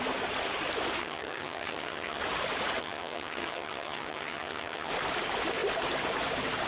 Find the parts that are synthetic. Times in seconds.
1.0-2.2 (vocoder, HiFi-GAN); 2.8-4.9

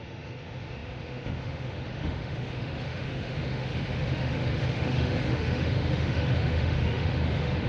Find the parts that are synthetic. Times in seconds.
0.0-7.7 (autoencoder, DAC-VAE)

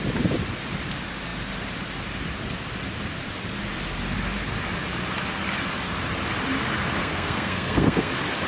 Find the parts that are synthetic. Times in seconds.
7.0-8.1 (codec, SNAC)